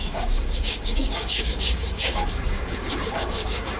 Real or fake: fake